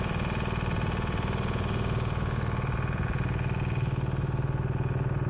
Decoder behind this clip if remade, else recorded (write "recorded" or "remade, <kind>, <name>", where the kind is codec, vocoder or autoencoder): recorded